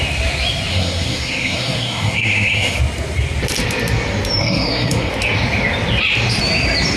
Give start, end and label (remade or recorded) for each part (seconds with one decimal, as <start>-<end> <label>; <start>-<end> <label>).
0.0-0.7 recorded; 0.7-2.8 remade; 2.8-4.4 recorded; 4.4-5.1 remade; 5.1-7.0 recorded